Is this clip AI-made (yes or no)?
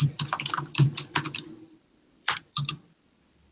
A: yes